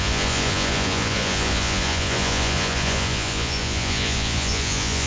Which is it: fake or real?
fake